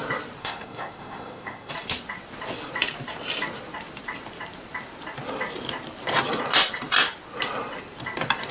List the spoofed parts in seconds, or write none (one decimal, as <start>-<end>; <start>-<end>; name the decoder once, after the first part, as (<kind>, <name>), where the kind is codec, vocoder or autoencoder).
0.4-1.7 (codec, SNAC)